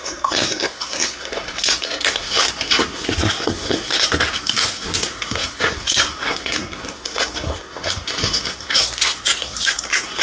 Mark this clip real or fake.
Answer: fake